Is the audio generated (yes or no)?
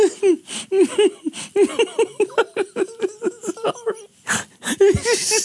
no